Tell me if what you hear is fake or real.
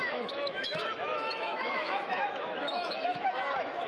fake